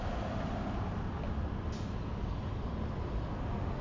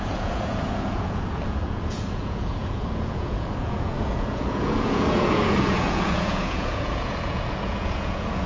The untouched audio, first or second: first